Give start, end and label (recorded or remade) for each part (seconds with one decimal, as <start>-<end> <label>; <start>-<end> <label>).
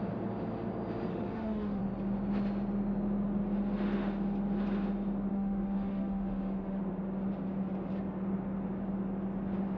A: 0.0-1.1 recorded; 1.1-1.8 remade; 1.8-5.3 recorded; 5.3-6.8 remade; 6.8-9.8 recorded